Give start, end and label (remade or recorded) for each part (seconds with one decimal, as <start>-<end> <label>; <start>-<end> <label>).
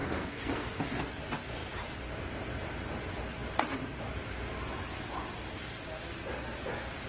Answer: 0.0-1.1 remade; 1.1-7.1 recorded